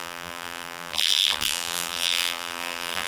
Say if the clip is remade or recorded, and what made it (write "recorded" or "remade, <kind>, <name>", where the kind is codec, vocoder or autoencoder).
remade, vocoder, BigVGAN v2